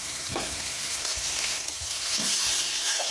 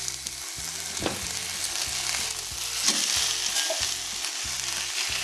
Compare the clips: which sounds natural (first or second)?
second